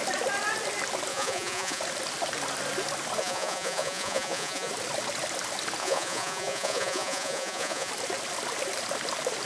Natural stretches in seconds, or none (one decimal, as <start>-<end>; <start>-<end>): 0.0-1.1; 1.8-3.2; 4.7-5.8; 7.9-9.5